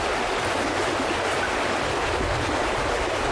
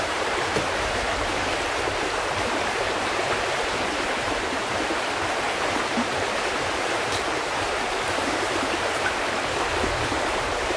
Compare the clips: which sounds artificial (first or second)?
second